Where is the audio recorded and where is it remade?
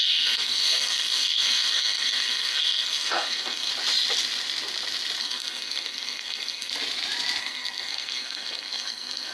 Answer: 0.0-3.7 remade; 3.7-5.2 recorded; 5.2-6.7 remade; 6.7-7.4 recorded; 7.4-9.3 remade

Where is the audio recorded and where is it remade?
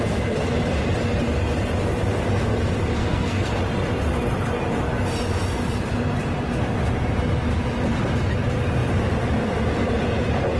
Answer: 0.0-3.0 recorded; 3.0-3.6 remade; 3.6-10.6 recorded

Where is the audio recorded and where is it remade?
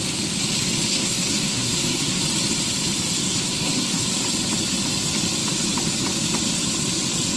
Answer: 0.0-0.9 recorded; 0.9-2.2 remade; 2.2-3.2 recorded; 3.2-4.1 remade; 4.1-7.4 recorded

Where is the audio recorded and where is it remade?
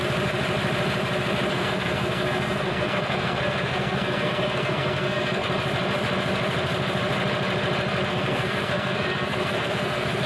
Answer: 0.0-1.5 recorded; 1.5-5.4 remade; 5.4-8.1 recorded; 8.1-10.3 remade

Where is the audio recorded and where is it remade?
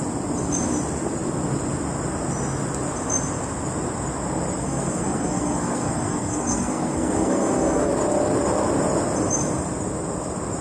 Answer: 0.0-4.6 recorded; 4.6-7.9 remade; 7.9-10.6 recorded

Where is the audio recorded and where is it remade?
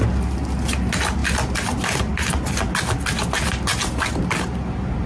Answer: 0.0-5.1 recorded